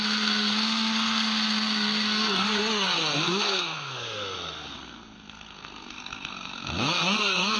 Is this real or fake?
fake